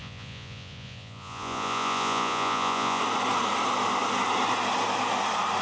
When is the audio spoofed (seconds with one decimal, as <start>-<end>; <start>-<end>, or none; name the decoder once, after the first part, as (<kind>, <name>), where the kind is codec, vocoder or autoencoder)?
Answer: 0.0-3.0 (vocoder, Vocos)